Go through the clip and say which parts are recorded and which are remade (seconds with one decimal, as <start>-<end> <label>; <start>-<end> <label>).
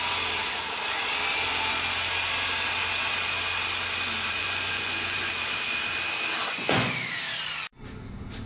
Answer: 0.0-4.4 recorded; 4.4-5.3 remade; 5.3-6.5 recorded; 6.5-7.1 remade; 7.1-8.5 recorded